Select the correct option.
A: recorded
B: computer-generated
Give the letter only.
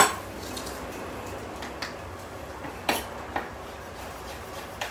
A